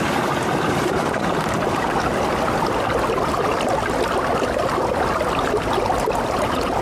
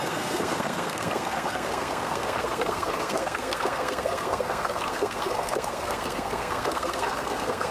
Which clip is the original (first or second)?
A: first